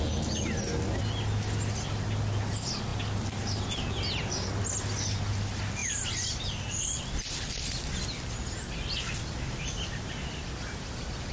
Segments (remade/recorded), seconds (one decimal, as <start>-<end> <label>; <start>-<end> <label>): 0.0-11.3 recorded